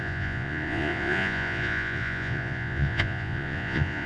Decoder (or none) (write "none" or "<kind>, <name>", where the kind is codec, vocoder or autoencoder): vocoder, Vocos